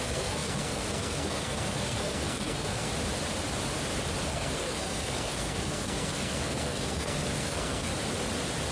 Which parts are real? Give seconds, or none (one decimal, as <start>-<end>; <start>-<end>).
2.9-4.2; 7.9-8.7